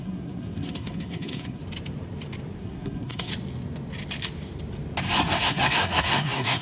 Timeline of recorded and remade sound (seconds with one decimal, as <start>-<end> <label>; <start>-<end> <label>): 0.0-1.6 remade; 1.6-2.6 recorded; 2.6-3.3 remade; 3.3-5.4 recorded; 5.4-6.6 remade